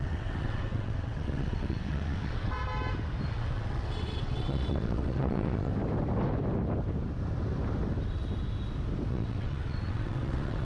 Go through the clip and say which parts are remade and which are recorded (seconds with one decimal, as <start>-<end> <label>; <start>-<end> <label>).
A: 0.0-2.6 remade; 2.6-3.3 recorded; 3.3-5.7 remade; 5.7-9.1 recorded; 9.1-10.6 remade